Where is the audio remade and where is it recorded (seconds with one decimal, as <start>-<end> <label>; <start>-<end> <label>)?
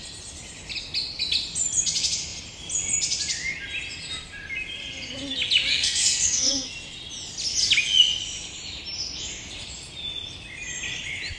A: 0.0-5.7 recorded; 5.7-6.7 remade; 6.7-11.4 recorded